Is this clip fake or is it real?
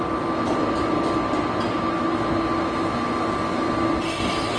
real